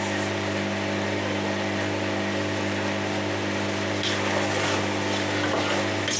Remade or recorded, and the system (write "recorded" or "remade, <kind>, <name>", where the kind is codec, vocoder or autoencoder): recorded